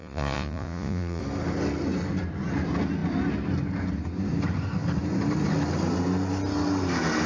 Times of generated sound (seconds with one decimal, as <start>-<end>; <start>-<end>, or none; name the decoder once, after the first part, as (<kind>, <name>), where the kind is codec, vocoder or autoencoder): 0.0-1.2 (vocoder, Vocos)